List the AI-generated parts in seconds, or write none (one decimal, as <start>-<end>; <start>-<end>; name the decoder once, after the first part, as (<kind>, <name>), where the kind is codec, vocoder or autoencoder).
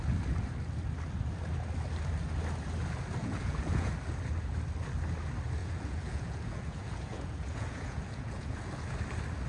3.2-3.9 (vocoder, Vocos); 5.6-8.9